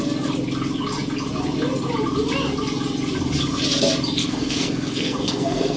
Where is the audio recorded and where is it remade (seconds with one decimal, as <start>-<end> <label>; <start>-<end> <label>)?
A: 0.0-4.2 recorded; 4.2-5.8 remade